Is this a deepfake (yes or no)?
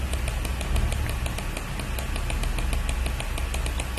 no